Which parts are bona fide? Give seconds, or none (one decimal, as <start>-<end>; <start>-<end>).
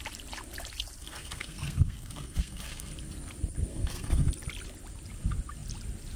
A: 0.0-1.0; 2.9-3.7; 4.3-6.2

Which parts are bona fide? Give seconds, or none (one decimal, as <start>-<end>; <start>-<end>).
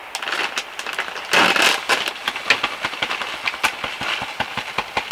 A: 0.0-5.1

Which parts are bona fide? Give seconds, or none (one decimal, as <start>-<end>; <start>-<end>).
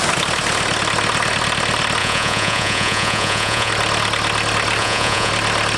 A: 0.0-2.0; 3.7-4.8; 5.3-5.8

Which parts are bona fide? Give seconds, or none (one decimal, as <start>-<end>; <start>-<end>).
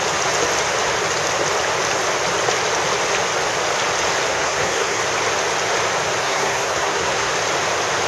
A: 0.0-4.3; 5.0-6.2; 7.3-8.1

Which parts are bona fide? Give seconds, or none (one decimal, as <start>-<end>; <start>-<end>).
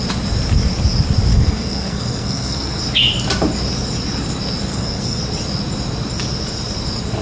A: 0.0-1.3; 2.8-4.7; 5.2-7.2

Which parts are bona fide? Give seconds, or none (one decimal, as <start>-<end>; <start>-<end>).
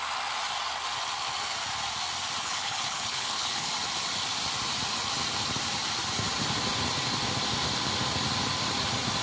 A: 0.0-2.4; 3.7-9.2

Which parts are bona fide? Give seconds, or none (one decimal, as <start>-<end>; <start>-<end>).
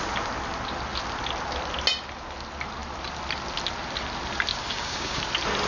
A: 0.0-4.5; 5.2-5.7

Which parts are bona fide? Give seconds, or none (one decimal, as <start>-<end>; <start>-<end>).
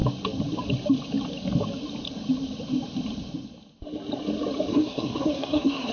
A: 0.0-4.7